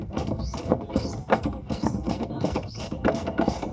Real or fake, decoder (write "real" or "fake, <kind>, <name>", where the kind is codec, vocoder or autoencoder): fake, codec, SNAC